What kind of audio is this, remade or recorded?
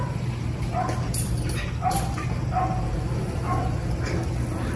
recorded